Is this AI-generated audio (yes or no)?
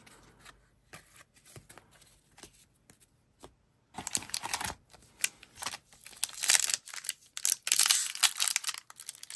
no